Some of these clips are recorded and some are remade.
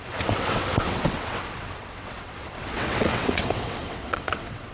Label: remade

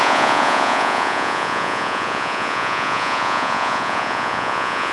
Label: remade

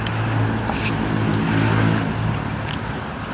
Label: recorded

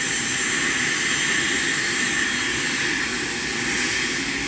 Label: recorded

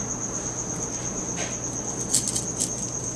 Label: recorded